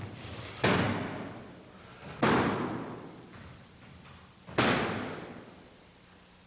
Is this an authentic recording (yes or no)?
yes